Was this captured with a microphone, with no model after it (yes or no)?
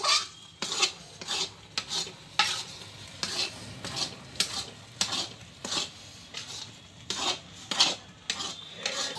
yes